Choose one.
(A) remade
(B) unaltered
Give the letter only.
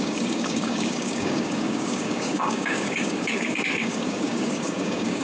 A